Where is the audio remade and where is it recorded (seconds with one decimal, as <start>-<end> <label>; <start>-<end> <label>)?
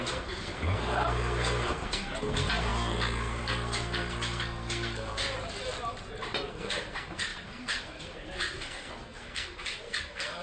0.0-5.2 remade; 5.2-6.5 recorded; 6.5-10.4 remade